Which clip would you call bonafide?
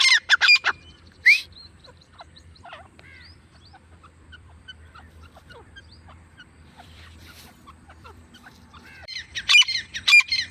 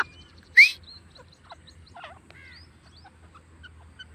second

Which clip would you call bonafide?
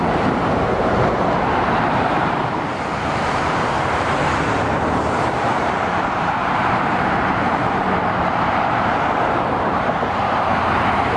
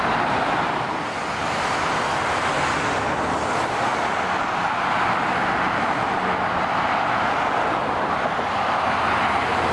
second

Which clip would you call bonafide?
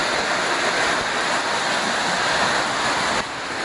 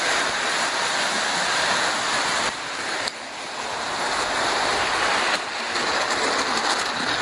first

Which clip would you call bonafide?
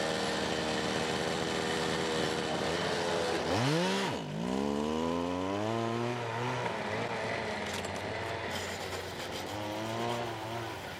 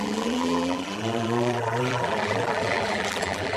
first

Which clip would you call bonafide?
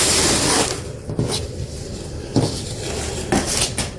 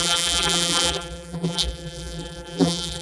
first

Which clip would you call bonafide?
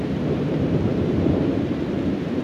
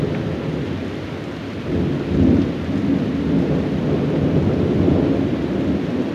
second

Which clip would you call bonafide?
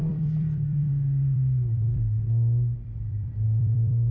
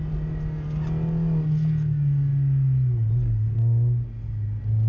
second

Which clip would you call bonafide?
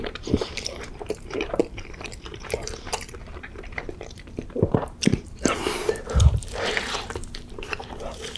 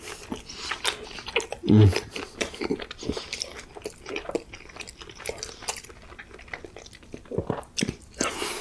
second